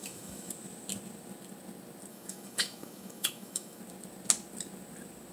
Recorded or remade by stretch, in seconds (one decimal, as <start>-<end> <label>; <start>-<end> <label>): 0.0-0.5 remade; 0.5-2.1 recorded; 2.1-3.8 remade; 3.8-5.3 recorded